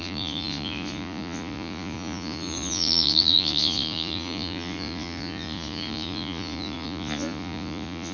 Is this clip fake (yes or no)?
yes